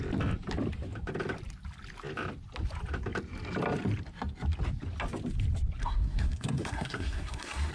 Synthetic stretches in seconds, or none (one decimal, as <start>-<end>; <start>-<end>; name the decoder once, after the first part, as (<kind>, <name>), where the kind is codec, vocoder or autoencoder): 5.8-7.7 (codec, SNAC)